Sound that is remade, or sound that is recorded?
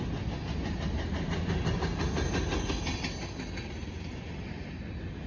recorded